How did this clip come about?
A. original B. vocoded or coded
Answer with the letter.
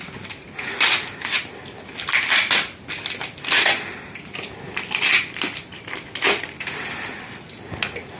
A